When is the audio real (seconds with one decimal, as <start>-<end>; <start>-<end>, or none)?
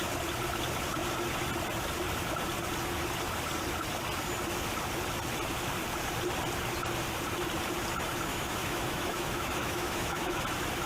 0.0-8.3; 10.4-10.9